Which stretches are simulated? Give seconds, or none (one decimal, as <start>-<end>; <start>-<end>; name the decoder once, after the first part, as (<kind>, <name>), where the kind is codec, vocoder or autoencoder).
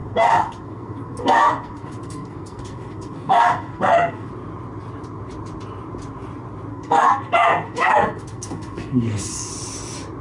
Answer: 0.0-4.3 (codec, SNAC); 6.7-9.5